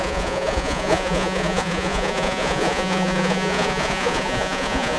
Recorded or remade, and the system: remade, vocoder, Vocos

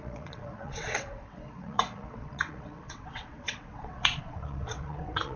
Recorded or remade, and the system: remade, vocoder, WaveNeXt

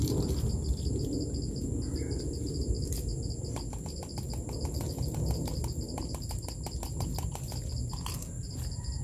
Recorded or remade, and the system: recorded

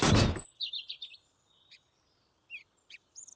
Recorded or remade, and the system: remade, vocoder, BigVGAN v2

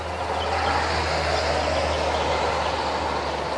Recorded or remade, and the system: recorded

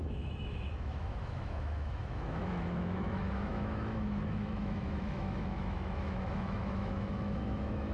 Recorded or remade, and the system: remade, autoencoder, DAC-VAE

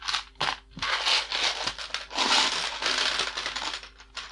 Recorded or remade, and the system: recorded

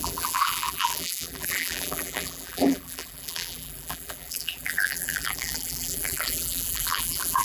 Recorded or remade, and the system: remade, vocoder, BigVGAN v2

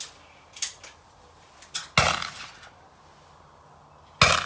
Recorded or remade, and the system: recorded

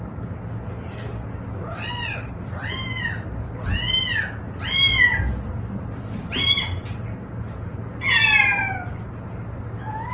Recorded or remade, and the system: recorded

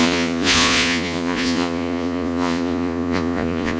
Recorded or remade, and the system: remade, vocoder, Vocos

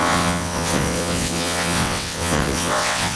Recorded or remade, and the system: remade, vocoder, WaveNeXt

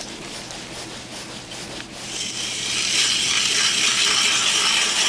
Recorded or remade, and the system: recorded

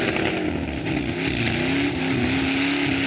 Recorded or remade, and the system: recorded